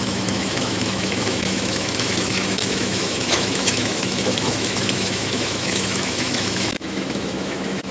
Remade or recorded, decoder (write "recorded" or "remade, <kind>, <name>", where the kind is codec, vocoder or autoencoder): remade, autoencoder, DAC-VAE